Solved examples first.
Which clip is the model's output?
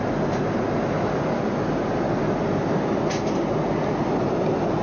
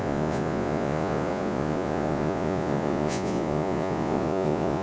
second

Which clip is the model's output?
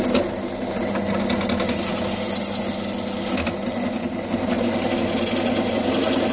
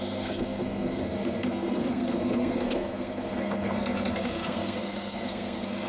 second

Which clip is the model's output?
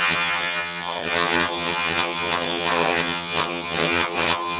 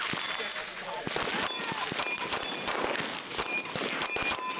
first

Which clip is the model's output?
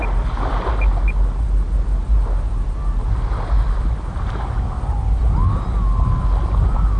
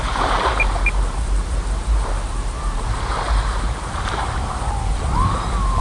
second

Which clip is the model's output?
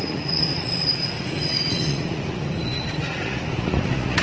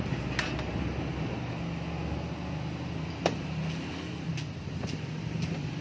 first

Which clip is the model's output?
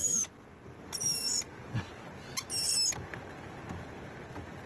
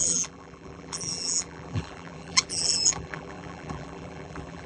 second